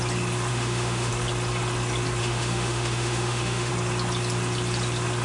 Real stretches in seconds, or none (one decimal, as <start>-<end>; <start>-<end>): 0.0-0.5; 1.1-2.2; 3.7-5.2